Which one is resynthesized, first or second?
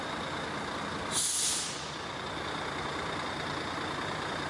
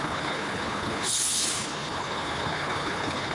second